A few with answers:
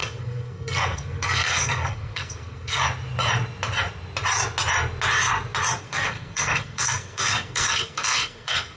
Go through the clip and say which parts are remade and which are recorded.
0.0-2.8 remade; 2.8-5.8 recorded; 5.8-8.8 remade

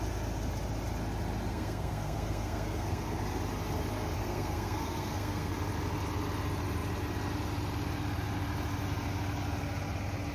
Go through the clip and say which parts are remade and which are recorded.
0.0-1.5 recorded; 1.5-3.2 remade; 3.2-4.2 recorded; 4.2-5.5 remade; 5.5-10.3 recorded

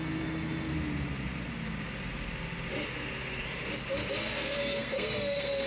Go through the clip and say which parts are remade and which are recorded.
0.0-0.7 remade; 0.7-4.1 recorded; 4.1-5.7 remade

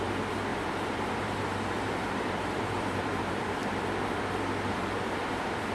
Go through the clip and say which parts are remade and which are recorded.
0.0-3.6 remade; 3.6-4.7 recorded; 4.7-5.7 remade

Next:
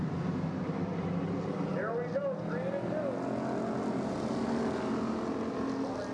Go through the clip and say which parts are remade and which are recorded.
0.0-6.1 recorded

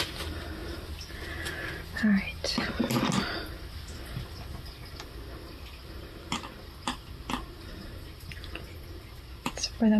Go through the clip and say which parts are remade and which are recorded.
0.0-10.0 recorded

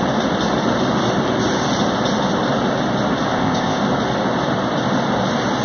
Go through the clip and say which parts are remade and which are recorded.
0.0-3.3 recorded; 3.3-3.8 remade; 3.8-5.6 recorded

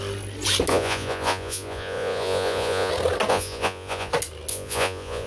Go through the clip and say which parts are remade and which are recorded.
0.0-0.7 recorded; 0.7-2.9 remade; 2.9-3.3 recorded; 3.3-4.1 remade; 4.1-4.5 recorded; 4.5-5.3 remade